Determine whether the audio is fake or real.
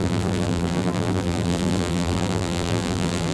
fake